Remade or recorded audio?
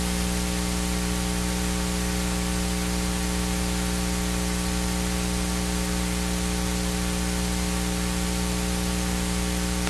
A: recorded